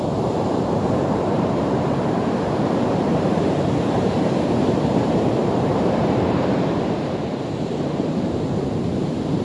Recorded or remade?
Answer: remade